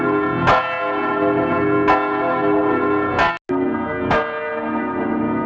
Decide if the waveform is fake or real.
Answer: real